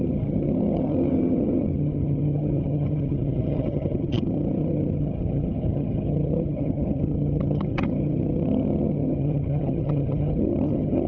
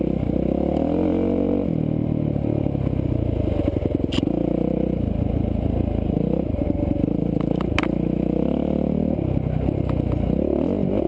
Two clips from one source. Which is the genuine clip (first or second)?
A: second